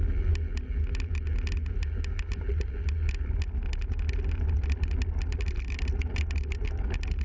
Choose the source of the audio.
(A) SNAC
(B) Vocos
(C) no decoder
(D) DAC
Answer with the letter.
C